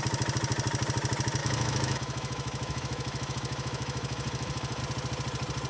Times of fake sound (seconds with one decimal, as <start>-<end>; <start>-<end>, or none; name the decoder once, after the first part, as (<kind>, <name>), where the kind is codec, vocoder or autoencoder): 1.4-4.8 (autoencoder, DAC-VAE)